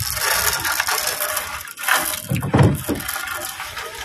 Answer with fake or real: real